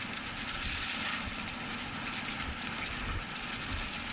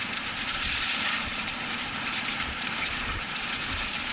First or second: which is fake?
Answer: second